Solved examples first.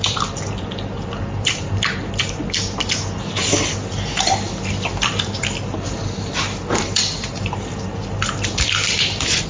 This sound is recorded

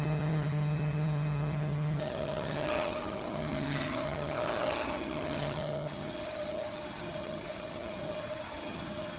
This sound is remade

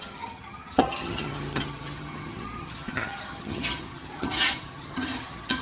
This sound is remade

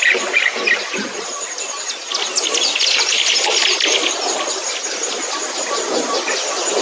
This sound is recorded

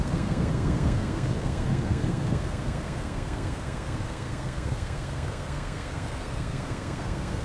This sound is remade